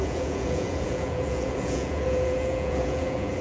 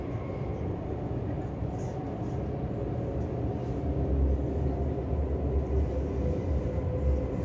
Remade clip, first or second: first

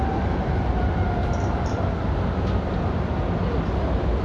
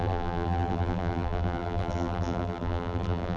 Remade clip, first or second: second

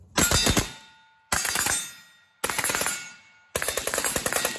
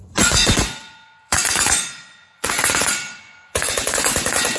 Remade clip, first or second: second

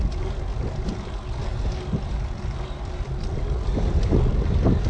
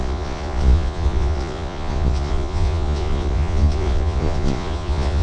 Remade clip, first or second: second